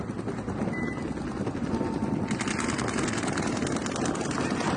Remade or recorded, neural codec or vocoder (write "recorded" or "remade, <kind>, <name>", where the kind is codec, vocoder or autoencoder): recorded